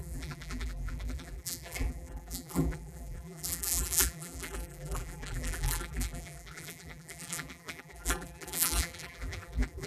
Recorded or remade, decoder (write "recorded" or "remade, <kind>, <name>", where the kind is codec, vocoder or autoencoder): remade, vocoder, BigVGAN v2